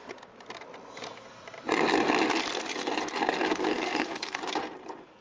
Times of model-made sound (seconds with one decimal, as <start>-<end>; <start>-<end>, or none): 3.7-4.4

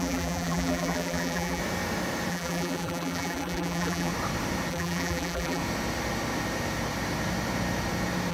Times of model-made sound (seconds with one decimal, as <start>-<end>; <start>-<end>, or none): 0.0-1.6; 2.3-4.1; 4.7-5.6

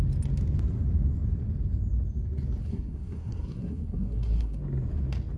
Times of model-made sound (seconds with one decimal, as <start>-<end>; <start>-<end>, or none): 2.6-4.6